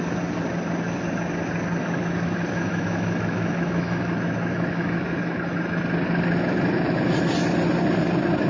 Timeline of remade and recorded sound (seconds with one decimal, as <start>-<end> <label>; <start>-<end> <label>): 0.0-1.8 recorded; 1.8-5.8 remade; 5.8-8.5 recorded